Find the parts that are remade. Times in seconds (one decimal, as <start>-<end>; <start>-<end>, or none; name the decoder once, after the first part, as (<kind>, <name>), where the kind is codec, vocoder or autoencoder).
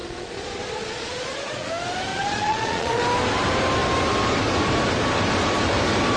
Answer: 0.0-1.7 (vocoder, Vocos); 2.1-3.0